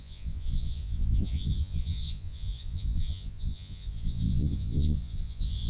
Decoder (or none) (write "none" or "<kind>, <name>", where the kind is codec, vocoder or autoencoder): vocoder, Vocos